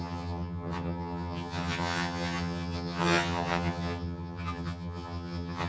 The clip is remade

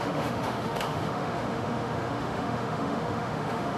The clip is remade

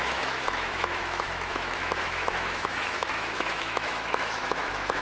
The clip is remade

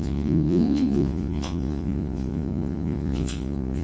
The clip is remade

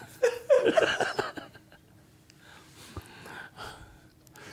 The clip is recorded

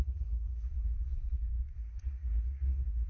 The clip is remade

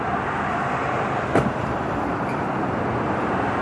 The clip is remade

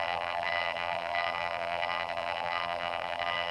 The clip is remade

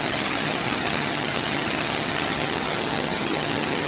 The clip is remade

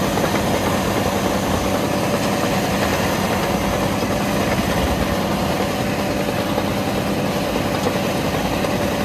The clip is recorded